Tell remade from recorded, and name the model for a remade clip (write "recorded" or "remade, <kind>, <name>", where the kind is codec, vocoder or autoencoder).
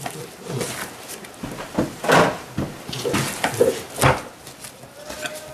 recorded